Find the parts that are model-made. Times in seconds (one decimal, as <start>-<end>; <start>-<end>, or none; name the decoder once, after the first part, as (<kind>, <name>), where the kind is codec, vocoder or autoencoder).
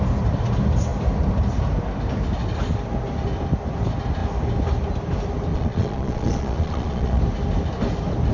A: 5.5-7.2 (vocoder, Vocos)